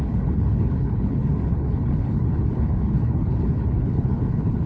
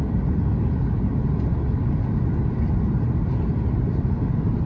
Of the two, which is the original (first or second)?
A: second